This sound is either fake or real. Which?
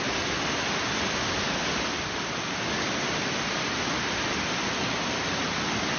real